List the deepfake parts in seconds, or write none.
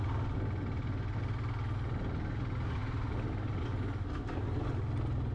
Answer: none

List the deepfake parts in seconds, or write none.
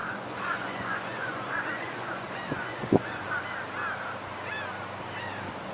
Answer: 0.0-3.4 (vocoder, Vocos)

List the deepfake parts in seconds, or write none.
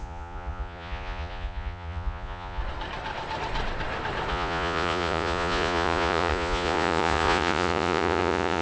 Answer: 0.0-2.6 (vocoder, Vocos); 4.3-8.6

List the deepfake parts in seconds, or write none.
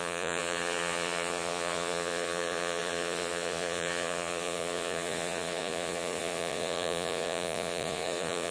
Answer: 0.0-8.5 (vocoder, Vocos)